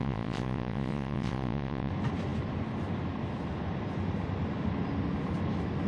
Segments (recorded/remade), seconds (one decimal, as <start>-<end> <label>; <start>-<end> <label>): 0.0-1.9 remade; 1.9-5.9 recorded